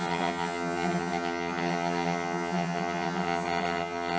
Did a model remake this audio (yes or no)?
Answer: yes